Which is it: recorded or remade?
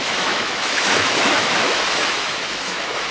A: remade